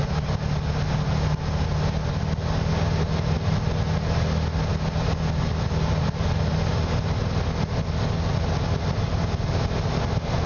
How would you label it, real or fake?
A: real